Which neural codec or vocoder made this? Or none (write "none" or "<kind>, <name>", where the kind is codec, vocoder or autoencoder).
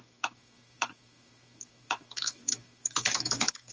autoencoder, DAC-VAE